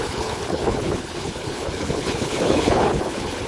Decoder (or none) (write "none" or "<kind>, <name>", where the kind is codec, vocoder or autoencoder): codec, HILCodec